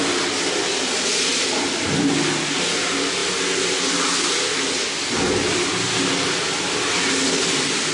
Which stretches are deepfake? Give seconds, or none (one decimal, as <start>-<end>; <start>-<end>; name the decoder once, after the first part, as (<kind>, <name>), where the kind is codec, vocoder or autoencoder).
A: none